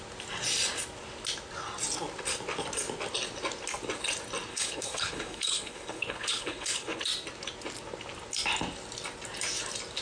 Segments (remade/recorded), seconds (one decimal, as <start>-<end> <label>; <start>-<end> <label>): 0.0-4.5 recorded; 4.5-7.0 remade; 7.0-10.0 recorded